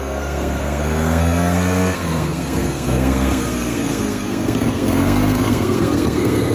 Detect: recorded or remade remade